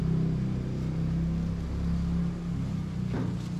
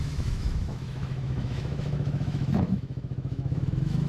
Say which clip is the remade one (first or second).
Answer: second